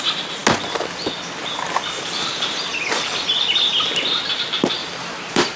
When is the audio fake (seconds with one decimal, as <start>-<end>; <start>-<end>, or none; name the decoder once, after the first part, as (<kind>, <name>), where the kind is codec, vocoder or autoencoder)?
4.8-5.6 (vocoder, BigVGAN v2)